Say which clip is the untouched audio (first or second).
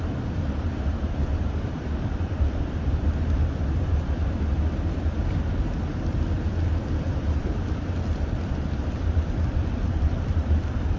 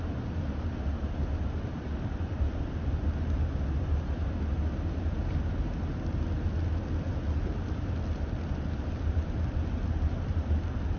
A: second